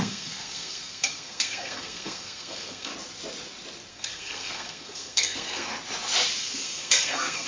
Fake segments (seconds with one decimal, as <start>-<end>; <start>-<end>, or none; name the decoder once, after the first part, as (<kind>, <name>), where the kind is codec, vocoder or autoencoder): 0.0-2.9 (codec, SNAC); 3.9-5.7; 6.4-7.5